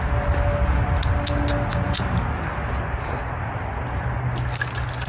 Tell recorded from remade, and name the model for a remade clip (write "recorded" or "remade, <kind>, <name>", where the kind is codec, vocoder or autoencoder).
recorded